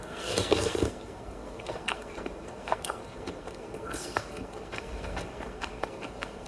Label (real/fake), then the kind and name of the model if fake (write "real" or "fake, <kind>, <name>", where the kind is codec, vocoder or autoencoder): fake, codec, SNAC